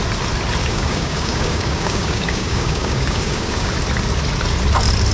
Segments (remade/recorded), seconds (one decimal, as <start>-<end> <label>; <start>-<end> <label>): 0.0-0.6 recorded; 0.6-3.7 remade; 3.7-5.1 recorded